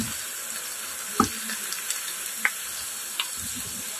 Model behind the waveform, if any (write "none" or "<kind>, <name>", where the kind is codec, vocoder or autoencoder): none